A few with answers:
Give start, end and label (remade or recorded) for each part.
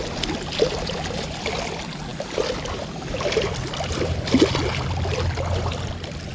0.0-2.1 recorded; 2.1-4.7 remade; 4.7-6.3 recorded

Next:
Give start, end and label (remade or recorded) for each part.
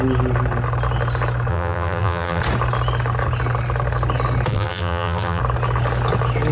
0.0-1.5 recorded; 1.5-2.4 remade; 2.4-4.5 recorded; 4.5-5.4 remade; 5.4-6.5 recorded